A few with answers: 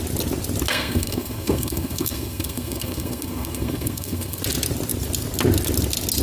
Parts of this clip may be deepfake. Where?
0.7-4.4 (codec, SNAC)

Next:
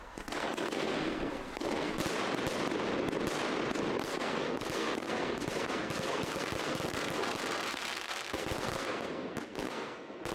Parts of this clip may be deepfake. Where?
0.0-2.0 (codec, SNAC); 4.0-10.3

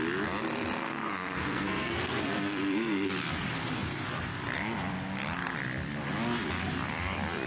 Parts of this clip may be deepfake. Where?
0.8-3.1 (codec, SNAC)

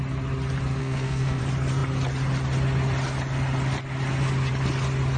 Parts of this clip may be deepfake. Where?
0.8-1.4 (codec, SNAC)

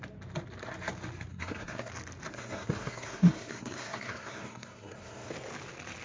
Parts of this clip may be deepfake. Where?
1.3-1.9 (codec, SNAC); 2.3-5.3

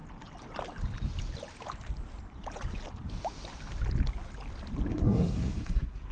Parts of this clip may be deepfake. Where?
4.9-6.1 (codec, SNAC)

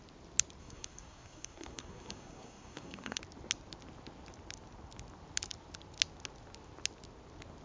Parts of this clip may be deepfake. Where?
0.6-3.2 (codec, SNAC)